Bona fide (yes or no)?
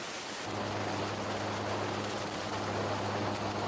yes